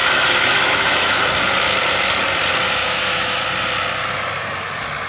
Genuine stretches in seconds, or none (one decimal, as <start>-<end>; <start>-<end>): 1.2-2.8; 3.4-5.1